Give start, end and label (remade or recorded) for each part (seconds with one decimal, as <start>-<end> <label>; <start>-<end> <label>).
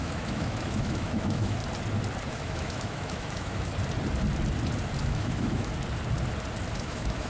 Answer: 0.0-1.6 remade; 1.6-2.3 recorded; 2.3-3.7 remade; 3.7-5.0 recorded; 5.0-5.7 remade; 5.7-6.8 recorded; 6.8-7.3 remade